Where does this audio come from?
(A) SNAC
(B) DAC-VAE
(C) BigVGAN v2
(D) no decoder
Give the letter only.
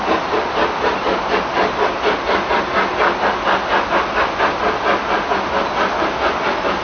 D